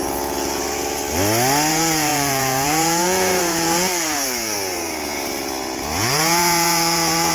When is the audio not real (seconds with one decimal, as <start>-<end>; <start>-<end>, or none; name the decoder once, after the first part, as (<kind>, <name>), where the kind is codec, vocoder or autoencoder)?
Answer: 0.0-1.0 (vocoder, Vocos); 1.7-7.3